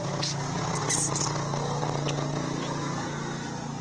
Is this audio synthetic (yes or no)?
no